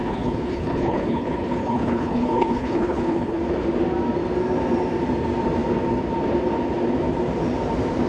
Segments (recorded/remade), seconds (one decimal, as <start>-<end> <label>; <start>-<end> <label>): 0.0-3.4 remade; 3.4-8.1 recorded